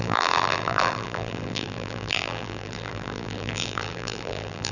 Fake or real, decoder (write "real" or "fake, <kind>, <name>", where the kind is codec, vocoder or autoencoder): fake, vocoder, BigVGAN v2